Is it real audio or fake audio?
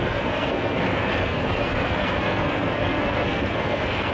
fake